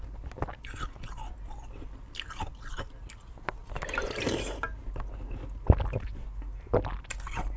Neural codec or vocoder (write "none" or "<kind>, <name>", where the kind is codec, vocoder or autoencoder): none